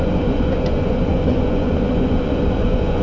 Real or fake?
fake